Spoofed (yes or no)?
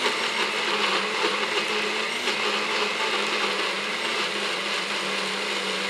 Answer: no